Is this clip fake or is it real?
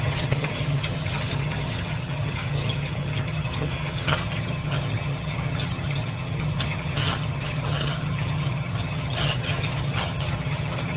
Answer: fake